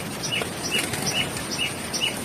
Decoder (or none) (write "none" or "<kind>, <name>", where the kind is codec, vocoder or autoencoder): none